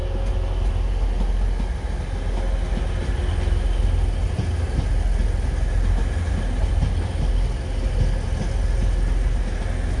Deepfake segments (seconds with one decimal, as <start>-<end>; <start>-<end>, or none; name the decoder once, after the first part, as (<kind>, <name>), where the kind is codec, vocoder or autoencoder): none